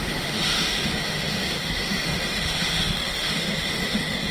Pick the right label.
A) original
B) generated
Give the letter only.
B